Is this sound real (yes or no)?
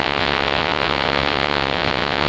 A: no